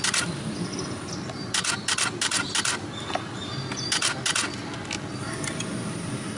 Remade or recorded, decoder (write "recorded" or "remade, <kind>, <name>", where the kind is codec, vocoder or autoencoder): recorded